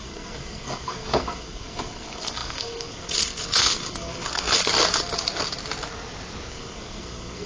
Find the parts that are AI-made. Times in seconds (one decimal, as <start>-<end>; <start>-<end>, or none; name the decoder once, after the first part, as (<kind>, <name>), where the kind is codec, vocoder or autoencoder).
0.0-4.6 (codec, SNAC); 6.5-7.5